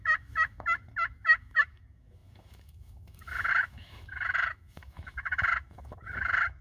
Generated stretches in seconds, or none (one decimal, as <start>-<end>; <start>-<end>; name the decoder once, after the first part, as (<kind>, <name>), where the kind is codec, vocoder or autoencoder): 0.0-6.6 (autoencoder, DAC-VAE)